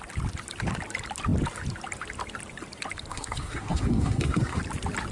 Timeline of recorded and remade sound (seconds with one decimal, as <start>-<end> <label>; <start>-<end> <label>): 0.0-3.1 recorded; 3.1-4.6 remade; 4.6-5.1 recorded